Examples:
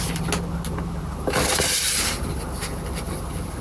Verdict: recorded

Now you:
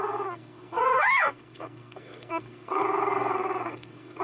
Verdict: remade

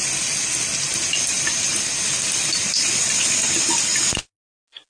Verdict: recorded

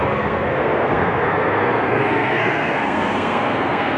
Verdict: remade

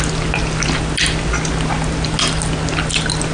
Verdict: recorded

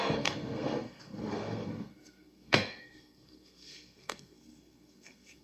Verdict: remade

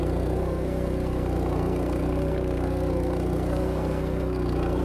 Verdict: remade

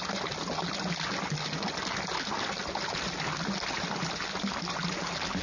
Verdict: recorded